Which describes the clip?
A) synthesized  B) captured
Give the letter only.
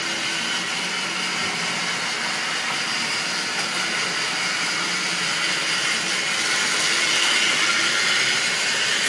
B